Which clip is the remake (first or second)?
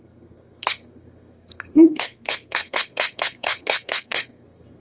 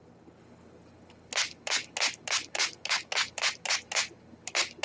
first